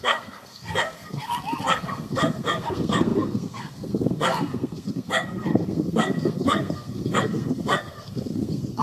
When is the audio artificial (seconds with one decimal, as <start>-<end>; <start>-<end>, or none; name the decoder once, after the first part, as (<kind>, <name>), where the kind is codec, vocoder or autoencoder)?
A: 0.0-8.8 (codec, SNAC)